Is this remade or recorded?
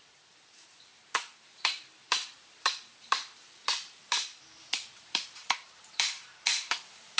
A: remade